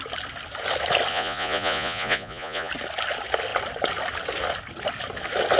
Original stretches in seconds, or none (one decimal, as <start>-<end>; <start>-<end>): 0.0-1.1; 2.7-5.6